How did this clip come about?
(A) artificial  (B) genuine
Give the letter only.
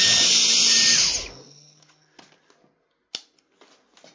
B